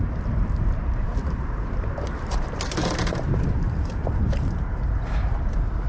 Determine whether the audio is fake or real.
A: fake